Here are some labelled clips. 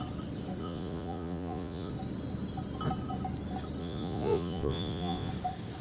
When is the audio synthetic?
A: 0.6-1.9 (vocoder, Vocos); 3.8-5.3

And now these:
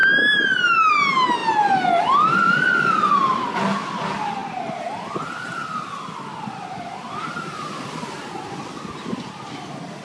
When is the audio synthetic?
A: 4.4-7.8 (vocoder, BigVGAN v2)

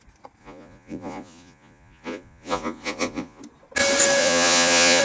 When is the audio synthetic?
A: 0.4-3.4 (vocoder, Vocos); 4.2-5.0

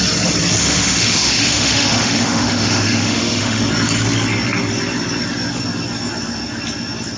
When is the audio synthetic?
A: 0.6-3.6 (autoencoder, DAC-VAE)

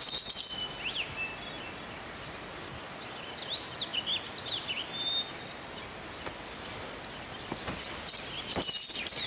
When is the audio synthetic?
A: none

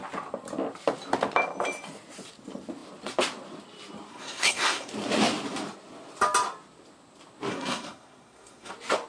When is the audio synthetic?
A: 4.1-4.9 (codec, SNAC); 7.5-8.7